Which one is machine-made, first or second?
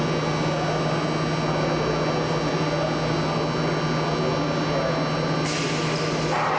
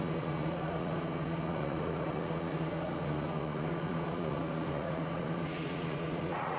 second